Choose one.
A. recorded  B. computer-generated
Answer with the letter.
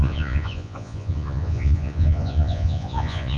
B